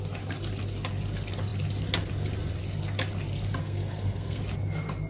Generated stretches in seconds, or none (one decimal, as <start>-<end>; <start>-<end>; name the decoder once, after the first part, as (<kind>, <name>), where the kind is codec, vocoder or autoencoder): 3.6-4.4 (codec, SNAC)